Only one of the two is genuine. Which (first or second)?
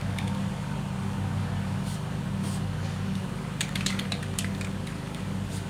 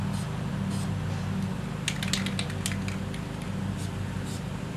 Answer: second